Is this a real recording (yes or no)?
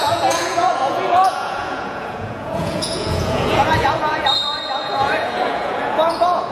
no